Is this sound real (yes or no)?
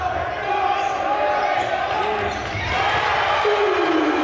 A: yes